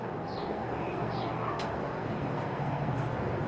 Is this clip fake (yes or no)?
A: yes